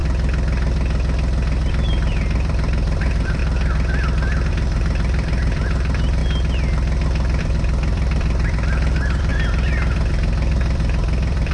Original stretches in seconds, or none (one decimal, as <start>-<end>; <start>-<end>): 0.0-1.7; 3.4-4.5; 6.2-7.4